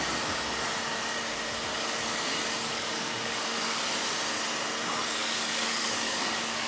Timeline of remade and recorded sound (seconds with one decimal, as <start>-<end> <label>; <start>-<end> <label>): 0.0-1.7 recorded; 1.7-3.8 remade; 3.8-5.2 recorded; 5.2-6.7 remade